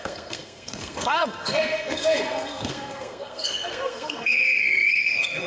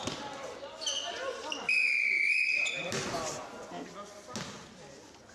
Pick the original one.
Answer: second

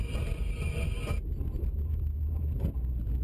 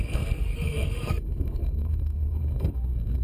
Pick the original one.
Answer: first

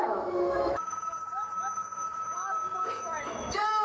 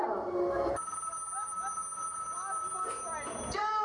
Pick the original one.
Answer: second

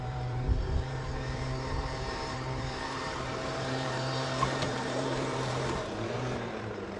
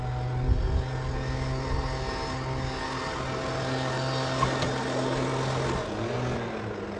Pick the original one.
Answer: second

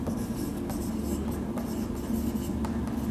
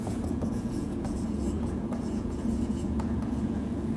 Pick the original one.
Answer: first